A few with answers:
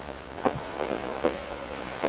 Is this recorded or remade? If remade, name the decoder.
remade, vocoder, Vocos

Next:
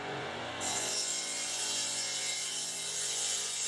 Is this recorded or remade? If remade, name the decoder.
remade, vocoder, Vocos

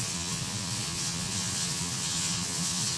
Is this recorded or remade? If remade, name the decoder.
remade, vocoder, Vocos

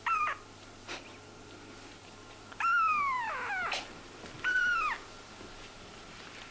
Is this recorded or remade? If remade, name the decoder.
recorded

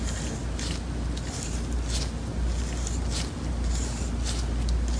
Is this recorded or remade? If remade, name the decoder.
recorded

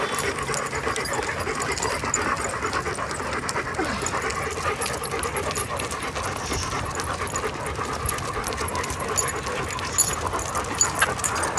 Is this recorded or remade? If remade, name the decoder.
recorded